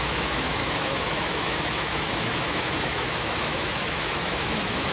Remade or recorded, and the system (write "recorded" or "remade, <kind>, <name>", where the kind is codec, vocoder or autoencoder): remade, autoencoder, DAC-VAE